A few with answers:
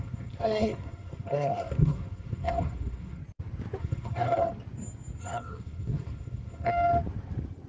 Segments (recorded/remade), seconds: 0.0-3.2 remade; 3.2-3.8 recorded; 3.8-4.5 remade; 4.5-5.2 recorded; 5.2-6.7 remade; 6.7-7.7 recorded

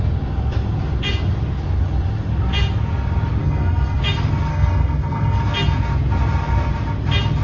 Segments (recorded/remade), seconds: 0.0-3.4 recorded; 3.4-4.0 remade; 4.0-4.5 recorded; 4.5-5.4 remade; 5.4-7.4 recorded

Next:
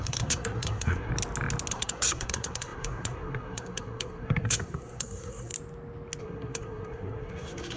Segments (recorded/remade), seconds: 0.0-1.1 remade; 1.1-1.7 recorded; 1.7-5.5 remade; 5.5-6.2 recorded; 6.2-7.8 remade

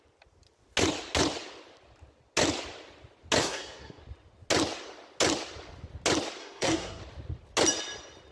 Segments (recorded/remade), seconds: 0.0-3.4 recorded; 3.4-4.0 remade; 4.0-6.4 recorded; 6.4-7.0 remade; 7.0-8.3 recorded

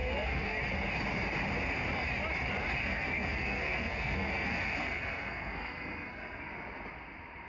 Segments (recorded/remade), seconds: 0.0-0.6 remade; 0.6-2.8 recorded; 2.8-6.5 remade; 6.5-7.5 recorded